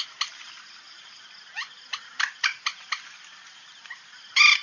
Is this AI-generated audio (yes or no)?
no